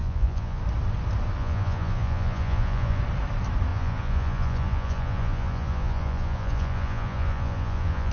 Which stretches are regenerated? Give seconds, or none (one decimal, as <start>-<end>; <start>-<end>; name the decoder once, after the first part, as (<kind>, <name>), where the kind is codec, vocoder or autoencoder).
0.0-0.6 (vocoder, Vocos); 1.4-3.0; 3.7-8.1

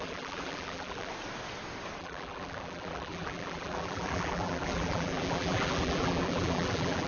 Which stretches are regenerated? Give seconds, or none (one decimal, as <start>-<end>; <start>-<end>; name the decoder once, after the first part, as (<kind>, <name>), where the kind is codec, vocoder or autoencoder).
0.0-1.1 (vocoder, BigVGAN v2); 2.0-7.1

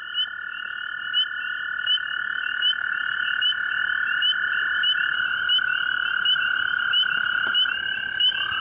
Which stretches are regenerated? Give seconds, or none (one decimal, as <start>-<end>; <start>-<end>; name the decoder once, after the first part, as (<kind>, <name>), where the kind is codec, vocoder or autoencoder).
none

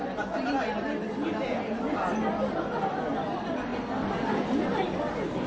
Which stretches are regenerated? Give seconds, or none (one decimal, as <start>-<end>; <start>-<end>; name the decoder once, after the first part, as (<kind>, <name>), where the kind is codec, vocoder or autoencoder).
none

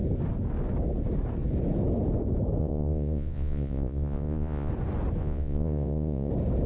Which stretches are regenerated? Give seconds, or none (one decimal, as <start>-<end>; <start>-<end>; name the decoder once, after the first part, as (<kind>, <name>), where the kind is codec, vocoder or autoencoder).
2.6-4.7 (vocoder, Vocos); 5.2-6.3

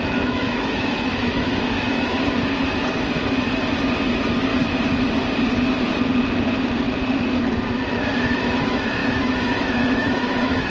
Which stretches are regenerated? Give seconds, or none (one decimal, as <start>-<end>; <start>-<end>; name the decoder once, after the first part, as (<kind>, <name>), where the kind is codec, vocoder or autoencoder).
0.0-2.1 (autoencoder, DAC-VAE); 4.1-4.5; 8.2-10.7

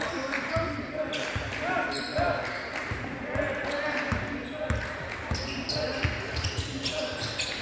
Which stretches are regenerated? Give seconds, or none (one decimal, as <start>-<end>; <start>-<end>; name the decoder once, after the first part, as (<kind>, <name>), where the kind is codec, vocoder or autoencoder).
none